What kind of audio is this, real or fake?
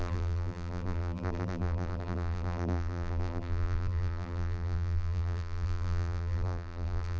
fake